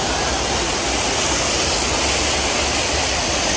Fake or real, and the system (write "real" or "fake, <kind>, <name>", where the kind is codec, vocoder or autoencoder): real